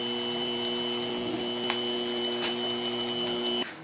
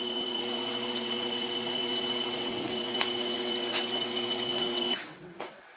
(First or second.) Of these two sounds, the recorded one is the first